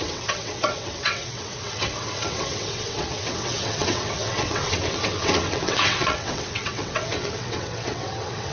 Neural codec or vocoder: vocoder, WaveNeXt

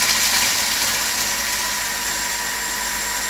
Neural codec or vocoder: none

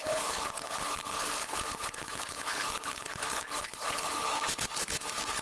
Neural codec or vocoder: codec, HILCodec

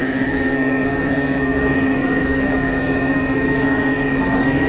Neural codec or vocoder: codec, SNAC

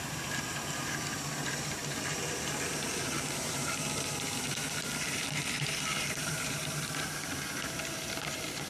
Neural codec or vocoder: vocoder, BigVGAN v2